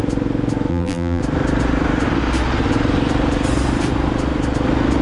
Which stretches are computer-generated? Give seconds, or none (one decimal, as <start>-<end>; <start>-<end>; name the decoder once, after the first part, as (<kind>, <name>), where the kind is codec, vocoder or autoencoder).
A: 0.7-1.2 (vocoder, BigVGAN v2)